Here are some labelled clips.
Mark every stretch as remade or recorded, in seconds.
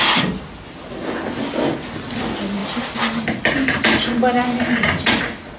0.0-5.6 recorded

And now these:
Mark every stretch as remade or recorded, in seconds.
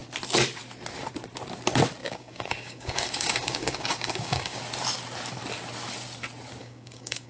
0.0-2.0 recorded; 2.0-4.6 remade; 4.6-6.6 recorded; 6.6-7.3 remade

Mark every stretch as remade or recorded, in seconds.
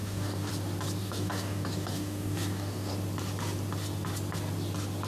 0.0-0.5 remade; 0.5-1.0 recorded; 1.0-2.9 remade; 2.9-5.1 recorded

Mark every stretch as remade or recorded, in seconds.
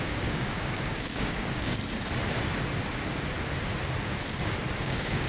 0.0-1.8 remade; 1.8-4.8 recorded; 4.8-5.3 remade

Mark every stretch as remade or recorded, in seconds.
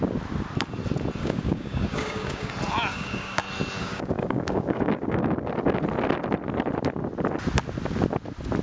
0.0-1.2 recorded; 1.2-2.5 remade; 2.5-2.9 recorded; 2.9-3.4 remade; 3.4-3.8 recorded; 3.8-5.5 remade; 5.5-8.6 recorded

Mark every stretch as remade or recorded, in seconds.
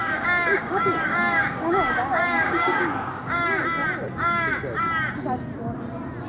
0.0-3.3 remade; 3.3-6.3 recorded